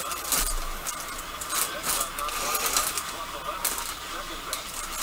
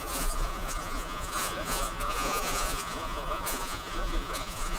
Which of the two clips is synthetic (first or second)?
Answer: second